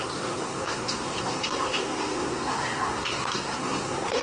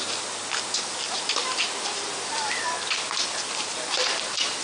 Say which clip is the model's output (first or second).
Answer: first